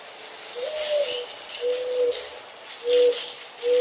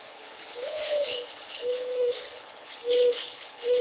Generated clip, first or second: second